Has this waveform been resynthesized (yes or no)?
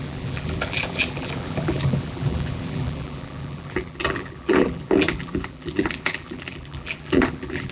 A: yes